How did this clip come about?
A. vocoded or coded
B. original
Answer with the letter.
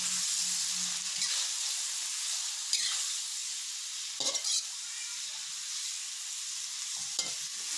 B